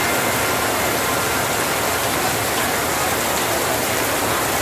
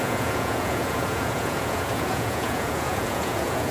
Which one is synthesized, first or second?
second